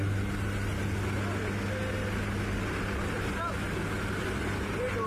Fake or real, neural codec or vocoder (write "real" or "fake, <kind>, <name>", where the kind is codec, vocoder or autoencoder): real